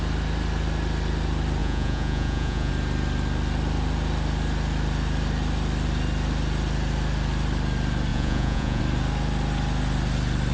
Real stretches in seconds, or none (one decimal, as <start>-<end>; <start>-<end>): 0.0-1.6; 2.7-8.1; 8.8-10.5